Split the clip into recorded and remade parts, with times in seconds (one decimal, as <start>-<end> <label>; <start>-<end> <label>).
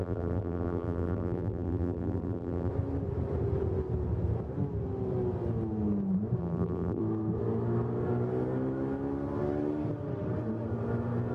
0.0-2.7 remade; 2.7-6.4 recorded; 6.4-7.0 remade; 7.0-11.3 recorded